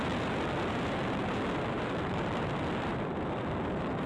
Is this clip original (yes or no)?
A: no